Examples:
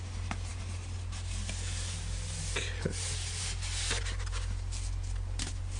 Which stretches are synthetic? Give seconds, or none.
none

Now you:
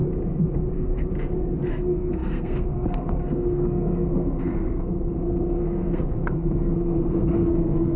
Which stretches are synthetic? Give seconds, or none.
0.7-1.1 (codec, SNAC); 1.7-8.0

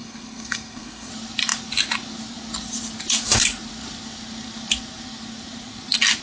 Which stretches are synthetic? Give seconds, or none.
0.0-1.1 (codec, SNAC)

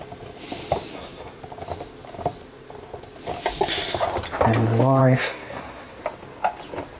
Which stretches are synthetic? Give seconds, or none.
0.9-1.4 (codec, SNAC); 5.0-6.0

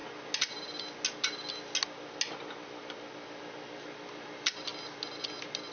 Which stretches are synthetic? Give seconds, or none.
none